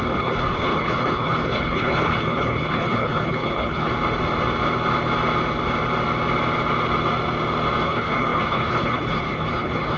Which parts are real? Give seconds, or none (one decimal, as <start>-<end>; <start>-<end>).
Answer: 3.9-7.8